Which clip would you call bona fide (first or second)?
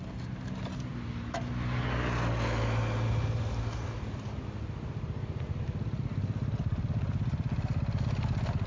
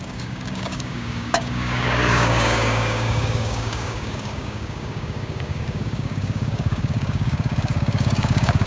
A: first